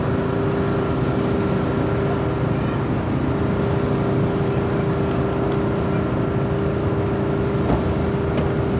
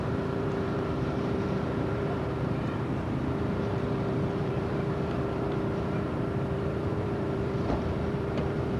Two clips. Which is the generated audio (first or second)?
second